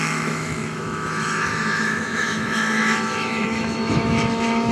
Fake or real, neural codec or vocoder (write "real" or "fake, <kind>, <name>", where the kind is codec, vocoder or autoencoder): fake, autoencoder, DAC-VAE